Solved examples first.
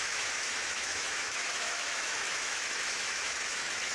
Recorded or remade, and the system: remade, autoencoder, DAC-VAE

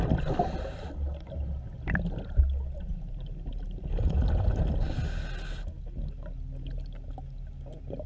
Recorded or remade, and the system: recorded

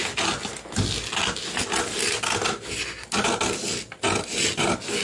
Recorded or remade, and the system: recorded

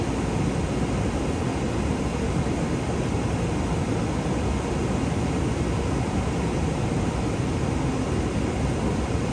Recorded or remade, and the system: recorded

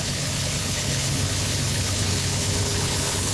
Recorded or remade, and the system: remade, codec, HILCodec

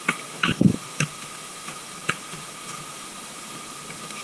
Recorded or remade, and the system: remade, autoencoder, DAC-VAE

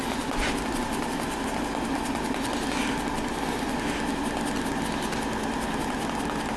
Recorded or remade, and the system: recorded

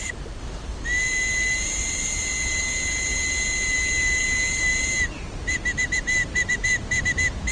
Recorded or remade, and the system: recorded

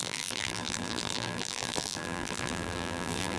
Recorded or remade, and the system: remade, vocoder, BigVGAN v2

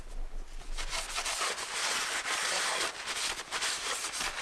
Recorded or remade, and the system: recorded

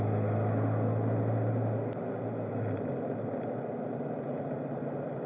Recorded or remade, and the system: recorded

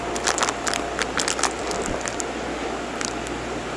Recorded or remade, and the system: recorded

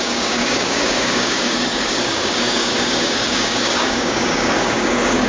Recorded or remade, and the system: remade, codec, DAC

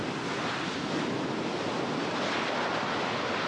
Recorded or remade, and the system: recorded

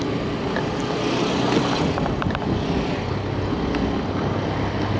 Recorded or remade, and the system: recorded